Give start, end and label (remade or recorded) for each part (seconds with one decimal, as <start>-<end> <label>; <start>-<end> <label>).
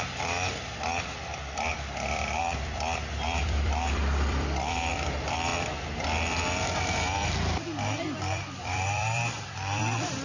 0.0-1.7 remade; 1.7-2.4 recorded; 2.4-5.5 remade; 5.5-6.6 recorded; 6.6-7.2 remade; 7.2-8.0 recorded; 8.0-10.2 remade